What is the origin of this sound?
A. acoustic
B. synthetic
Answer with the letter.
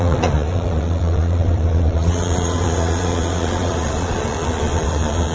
B